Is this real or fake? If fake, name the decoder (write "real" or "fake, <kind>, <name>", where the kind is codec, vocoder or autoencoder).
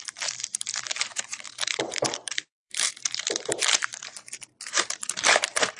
fake, vocoder, BigVGAN v2